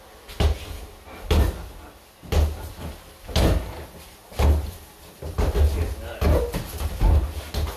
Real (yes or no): yes